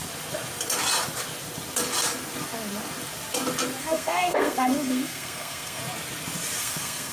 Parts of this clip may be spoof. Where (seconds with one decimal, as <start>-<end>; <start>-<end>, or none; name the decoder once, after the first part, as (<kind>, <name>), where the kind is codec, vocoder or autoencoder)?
3.8-5.8 (codec, SNAC); 6.6-7.1